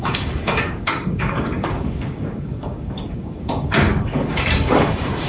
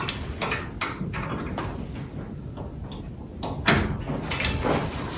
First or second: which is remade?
first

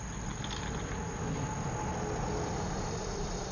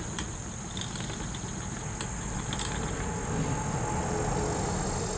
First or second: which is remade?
first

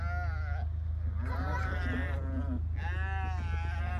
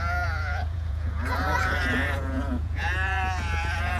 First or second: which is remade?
second